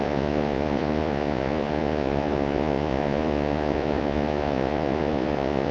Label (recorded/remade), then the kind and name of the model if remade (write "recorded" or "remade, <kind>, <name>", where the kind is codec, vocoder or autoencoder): remade, vocoder, Vocos